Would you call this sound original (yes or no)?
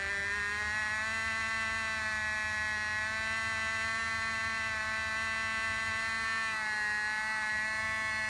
yes